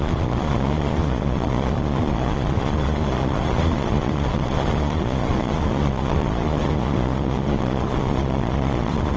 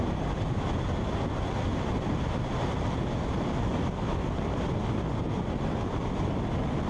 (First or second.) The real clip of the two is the second